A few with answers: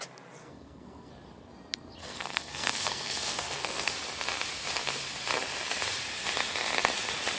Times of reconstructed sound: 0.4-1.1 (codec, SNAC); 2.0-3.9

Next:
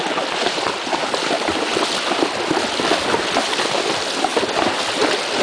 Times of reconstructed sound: none

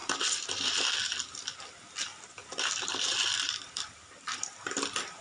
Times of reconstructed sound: 0.0-0.9 (vocoder, BigVGAN v2); 2.1-5.2

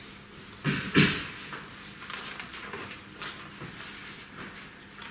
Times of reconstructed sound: 2.5-3.0 (vocoder, BigVGAN v2)

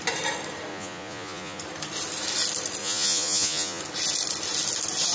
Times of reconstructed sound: 0.7-1.6 (vocoder, Vocos); 2.8-3.8

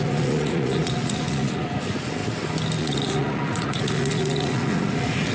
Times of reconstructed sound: 0.0-2.2 (vocoder, Vocos); 2.8-5.3

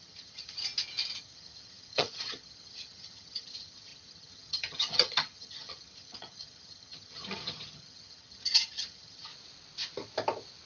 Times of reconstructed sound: 0.0-0.6 (vocoder, HiFi-GAN); 1.2-9.3

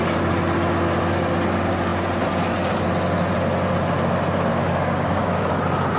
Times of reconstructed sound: 4.5-5.5 (codec, DAC)